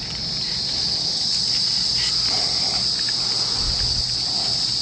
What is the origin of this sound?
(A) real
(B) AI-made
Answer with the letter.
A